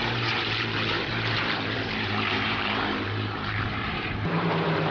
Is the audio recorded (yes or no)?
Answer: no